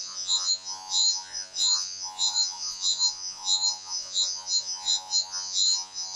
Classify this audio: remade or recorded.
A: remade